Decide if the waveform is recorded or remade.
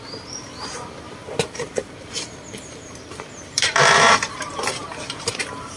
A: remade